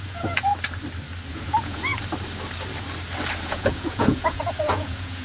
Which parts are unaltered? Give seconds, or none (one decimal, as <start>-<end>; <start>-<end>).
0.5-1.3; 1.9-3.4